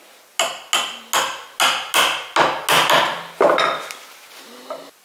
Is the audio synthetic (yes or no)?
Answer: no